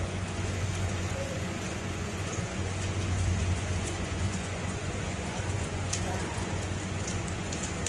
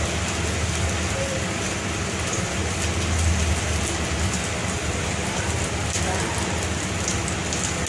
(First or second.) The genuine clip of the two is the second